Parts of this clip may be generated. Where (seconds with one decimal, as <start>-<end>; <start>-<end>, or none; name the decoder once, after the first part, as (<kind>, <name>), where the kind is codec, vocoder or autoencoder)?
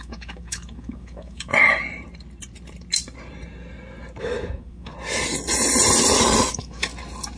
0.0-1.5 (autoencoder, DAC-VAE); 4.2-4.9; 6.5-6.9